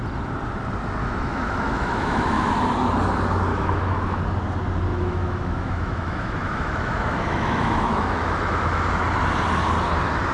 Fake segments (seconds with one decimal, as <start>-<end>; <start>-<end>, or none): 1.0-2.5; 3.5-4.2; 4.9-8.9